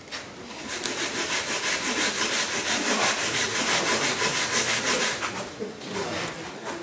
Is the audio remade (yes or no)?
no